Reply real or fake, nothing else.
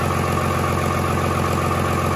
real